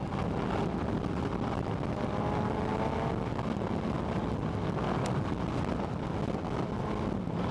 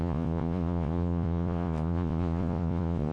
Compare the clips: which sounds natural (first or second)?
first